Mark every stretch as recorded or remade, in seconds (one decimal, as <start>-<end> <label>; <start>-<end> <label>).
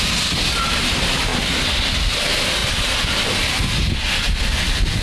0.0-5.0 recorded